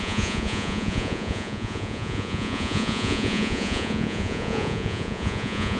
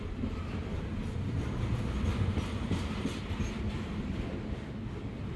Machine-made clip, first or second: first